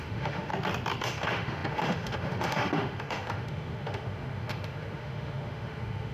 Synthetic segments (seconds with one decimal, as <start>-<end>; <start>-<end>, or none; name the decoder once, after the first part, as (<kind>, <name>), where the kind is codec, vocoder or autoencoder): 0.0-0.5 (autoencoder, DAC-VAE); 1.0-6.1